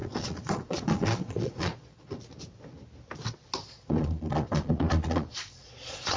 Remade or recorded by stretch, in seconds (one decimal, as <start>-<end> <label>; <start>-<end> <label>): 0.0-2.2 remade; 2.2-3.6 recorded; 3.6-6.2 remade

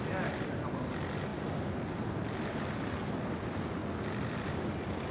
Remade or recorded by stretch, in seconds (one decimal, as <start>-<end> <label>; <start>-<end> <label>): 0.0-5.1 recorded

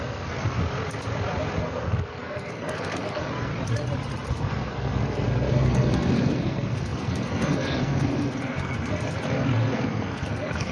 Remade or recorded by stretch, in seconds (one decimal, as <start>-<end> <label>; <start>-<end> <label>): 0.0-0.6 remade; 0.6-1.6 recorded; 1.6-3.5 remade; 3.5-4.3 recorded; 4.3-10.7 remade